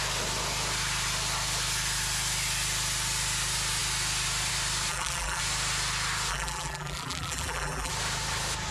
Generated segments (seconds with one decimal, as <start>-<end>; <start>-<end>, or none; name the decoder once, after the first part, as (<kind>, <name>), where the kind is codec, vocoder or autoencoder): 4.9-5.4 (vocoder, BigVGAN v2); 6.3-7.9

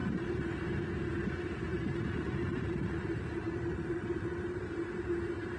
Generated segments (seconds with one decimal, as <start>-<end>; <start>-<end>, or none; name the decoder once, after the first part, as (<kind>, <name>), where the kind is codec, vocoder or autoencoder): 0.0-0.7 (vocoder, BigVGAN v2); 1.7-5.1

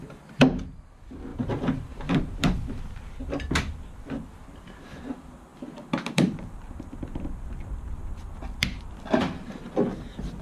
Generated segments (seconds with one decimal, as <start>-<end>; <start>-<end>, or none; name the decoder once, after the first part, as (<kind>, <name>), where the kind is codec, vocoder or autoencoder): 1.3-4.1 (vocoder, BigVGAN v2); 5.5-8.8

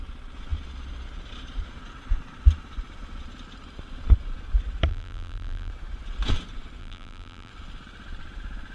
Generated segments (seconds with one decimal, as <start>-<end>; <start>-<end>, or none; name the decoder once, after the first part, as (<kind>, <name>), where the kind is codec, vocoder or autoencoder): 4.9-5.7 (vocoder, BigVGAN v2); 6.8-7.5

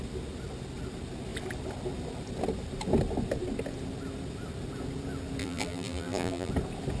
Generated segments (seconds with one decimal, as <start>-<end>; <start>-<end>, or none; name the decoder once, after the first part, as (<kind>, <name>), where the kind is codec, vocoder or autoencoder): 5.4-6.5 (vocoder, BigVGAN v2)

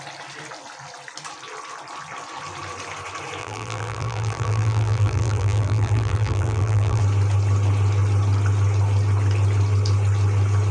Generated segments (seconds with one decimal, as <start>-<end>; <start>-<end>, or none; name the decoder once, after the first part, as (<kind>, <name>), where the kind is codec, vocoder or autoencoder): 3.4-7.0 (vocoder, BigVGAN v2)

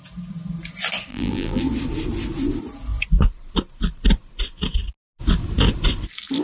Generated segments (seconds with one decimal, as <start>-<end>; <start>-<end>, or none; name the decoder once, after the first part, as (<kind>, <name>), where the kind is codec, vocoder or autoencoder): 1.1-1.6 (vocoder, BigVGAN v2)